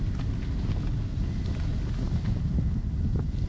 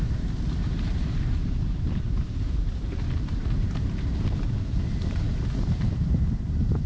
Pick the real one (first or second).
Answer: first